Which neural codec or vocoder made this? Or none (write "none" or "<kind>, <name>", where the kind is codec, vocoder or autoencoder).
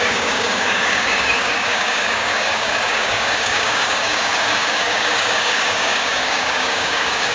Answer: codec, DAC